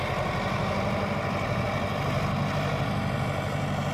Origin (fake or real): real